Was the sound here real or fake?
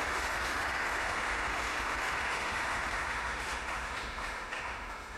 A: fake